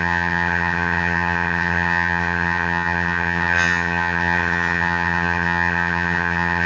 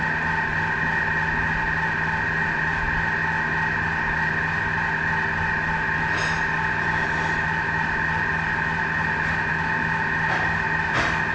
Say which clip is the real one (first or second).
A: second